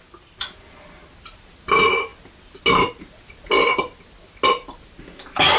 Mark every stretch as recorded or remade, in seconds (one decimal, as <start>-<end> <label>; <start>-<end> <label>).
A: 0.0-5.6 recorded